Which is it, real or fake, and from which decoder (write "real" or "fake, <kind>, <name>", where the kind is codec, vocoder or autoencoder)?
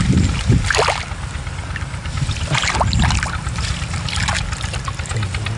real